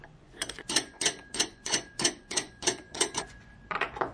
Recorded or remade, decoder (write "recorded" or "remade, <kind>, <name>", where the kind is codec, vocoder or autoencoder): remade, vocoder, Vocos